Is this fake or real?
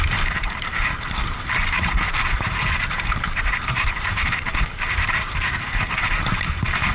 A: fake